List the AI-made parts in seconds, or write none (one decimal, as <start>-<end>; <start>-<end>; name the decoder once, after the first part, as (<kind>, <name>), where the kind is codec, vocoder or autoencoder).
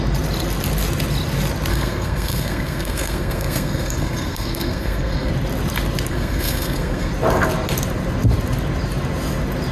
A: 1.7-5.3 (codec, SNAC); 6.1-7.1